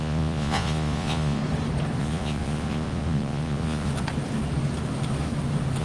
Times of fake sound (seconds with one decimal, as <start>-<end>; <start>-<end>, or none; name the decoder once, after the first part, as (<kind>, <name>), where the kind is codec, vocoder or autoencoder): 0.0-1.4 (vocoder, Vocos); 2.0-3.9